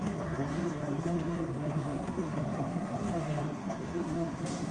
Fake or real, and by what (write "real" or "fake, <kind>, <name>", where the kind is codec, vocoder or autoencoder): fake, codec, SNAC